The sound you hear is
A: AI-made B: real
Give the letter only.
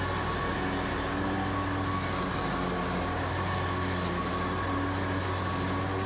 B